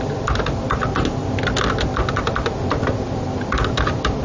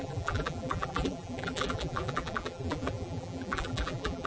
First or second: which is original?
first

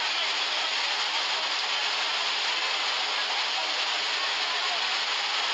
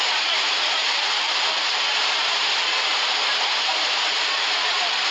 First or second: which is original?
first